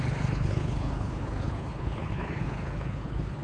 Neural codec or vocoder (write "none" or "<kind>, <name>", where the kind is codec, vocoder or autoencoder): codec, HILCodec